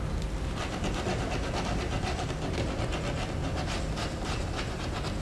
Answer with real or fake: real